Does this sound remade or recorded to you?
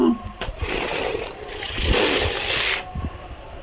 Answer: recorded